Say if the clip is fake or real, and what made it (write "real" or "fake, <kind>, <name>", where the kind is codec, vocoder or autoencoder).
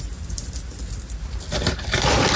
real